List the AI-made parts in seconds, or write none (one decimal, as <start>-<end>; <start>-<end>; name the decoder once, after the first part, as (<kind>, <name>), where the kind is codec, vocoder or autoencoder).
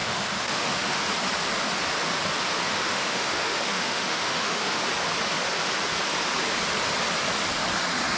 0.0-1.0 (autoencoder, DAC-VAE); 2.7-4.8